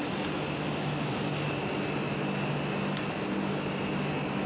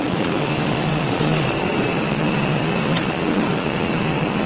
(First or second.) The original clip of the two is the first